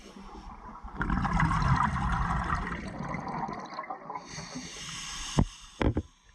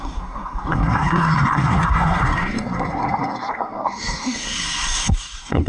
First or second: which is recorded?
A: first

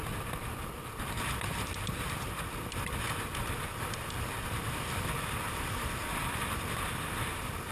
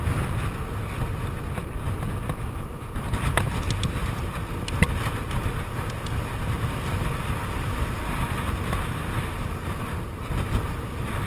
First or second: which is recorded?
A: second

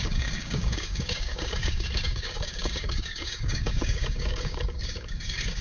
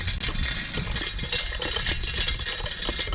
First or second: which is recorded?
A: second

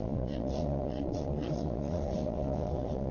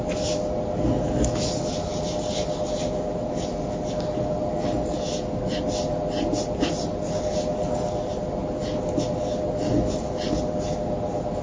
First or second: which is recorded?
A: second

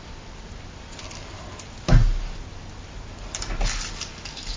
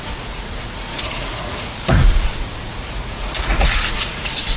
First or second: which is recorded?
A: first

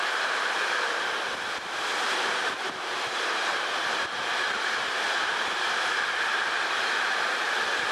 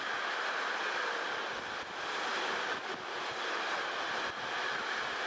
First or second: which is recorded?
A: second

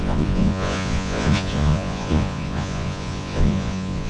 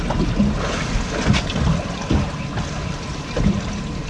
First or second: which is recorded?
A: second